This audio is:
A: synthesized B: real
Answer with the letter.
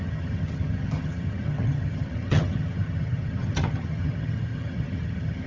A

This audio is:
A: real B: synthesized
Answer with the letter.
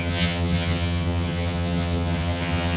B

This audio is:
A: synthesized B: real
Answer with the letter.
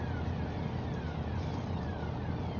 B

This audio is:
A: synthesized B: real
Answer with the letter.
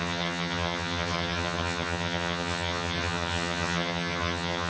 A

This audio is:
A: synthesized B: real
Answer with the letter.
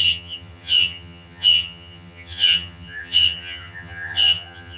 A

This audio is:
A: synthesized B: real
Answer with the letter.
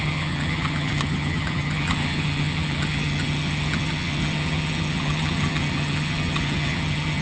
A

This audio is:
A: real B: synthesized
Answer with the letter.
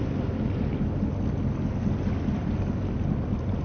A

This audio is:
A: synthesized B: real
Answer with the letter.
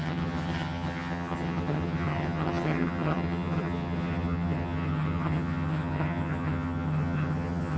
A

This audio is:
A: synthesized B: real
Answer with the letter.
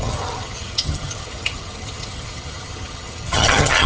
A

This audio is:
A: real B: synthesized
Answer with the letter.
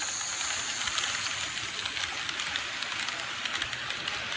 A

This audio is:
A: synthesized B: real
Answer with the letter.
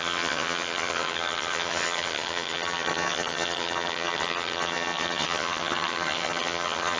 A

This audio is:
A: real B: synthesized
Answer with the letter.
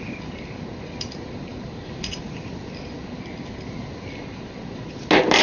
A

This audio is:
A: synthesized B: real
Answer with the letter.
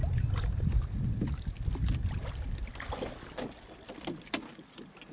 B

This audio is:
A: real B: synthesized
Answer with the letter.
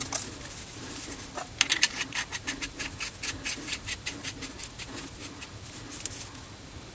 A